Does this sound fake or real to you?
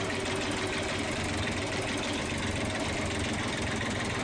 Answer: real